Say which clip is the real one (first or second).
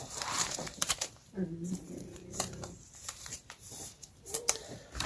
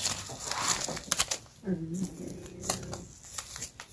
second